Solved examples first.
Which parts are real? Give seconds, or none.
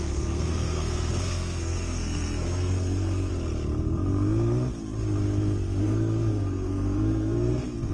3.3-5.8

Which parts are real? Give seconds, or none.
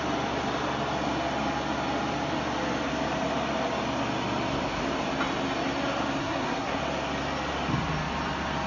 0.0-6.2; 6.8-8.7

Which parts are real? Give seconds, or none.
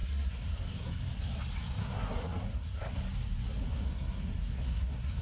1.0-1.8; 3.0-3.6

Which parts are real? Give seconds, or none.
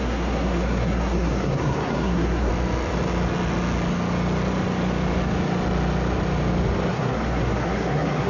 2.5-6.9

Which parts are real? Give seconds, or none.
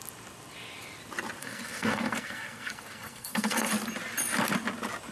0.0-1.4; 3.7-5.1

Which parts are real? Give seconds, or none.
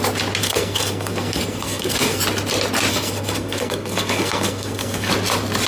0.0-0.4; 2.2-2.9; 5.1-5.7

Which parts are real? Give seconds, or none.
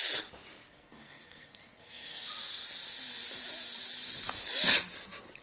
0.0-0.6; 2.3-5.4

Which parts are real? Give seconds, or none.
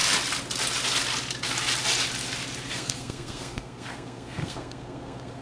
0.0-2.7